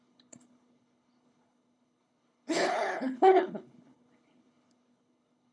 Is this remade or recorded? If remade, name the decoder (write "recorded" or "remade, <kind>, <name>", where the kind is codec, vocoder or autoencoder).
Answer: remade, codec, HILCodec